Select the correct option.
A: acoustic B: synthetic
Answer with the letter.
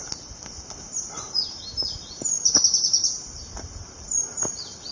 A